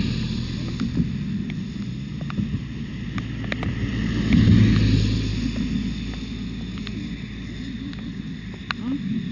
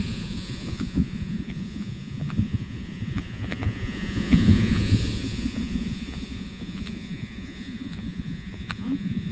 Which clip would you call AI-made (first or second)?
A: second